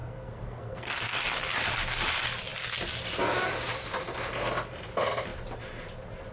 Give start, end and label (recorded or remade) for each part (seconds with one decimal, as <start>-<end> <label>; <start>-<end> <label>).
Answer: 0.0-1.2 remade; 1.2-6.3 recorded